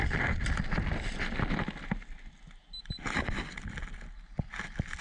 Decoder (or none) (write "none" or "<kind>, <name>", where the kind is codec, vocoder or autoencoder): none